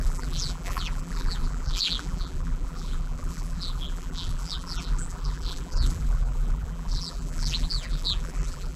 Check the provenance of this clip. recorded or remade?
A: remade